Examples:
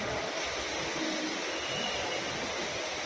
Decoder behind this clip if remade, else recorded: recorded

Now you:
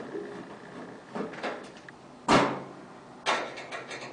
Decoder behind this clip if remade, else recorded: recorded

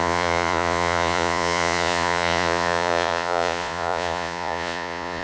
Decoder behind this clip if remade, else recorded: remade, vocoder, Vocos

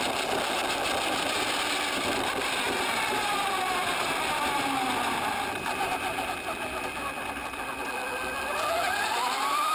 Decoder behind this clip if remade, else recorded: recorded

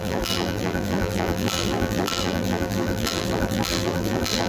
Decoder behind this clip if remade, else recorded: remade, vocoder, BigVGAN v2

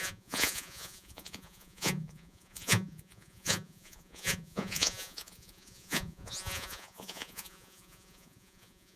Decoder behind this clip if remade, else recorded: remade, vocoder, Vocos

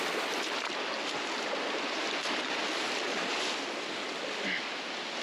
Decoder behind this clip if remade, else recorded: recorded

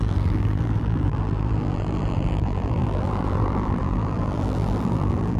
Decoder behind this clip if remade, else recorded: remade, vocoder, BigVGAN v2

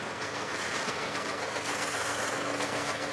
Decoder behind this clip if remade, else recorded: remade, codec, SNAC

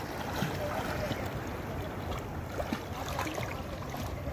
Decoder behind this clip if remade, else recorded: remade, vocoder, BigVGAN v2